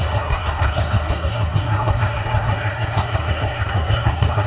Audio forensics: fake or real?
fake